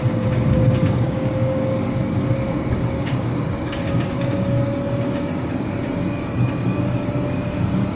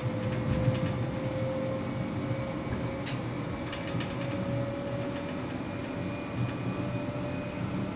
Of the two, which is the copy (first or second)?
first